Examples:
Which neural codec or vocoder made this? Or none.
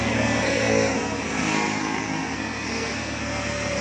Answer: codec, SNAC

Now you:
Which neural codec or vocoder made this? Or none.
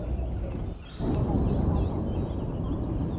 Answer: none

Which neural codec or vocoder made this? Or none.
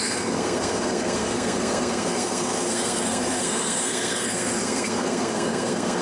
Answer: codec, SNAC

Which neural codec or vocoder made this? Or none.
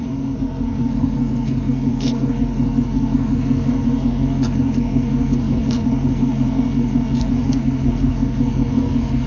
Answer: codec, SNAC